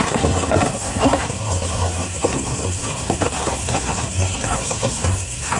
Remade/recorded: remade